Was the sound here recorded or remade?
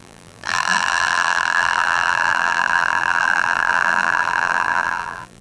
remade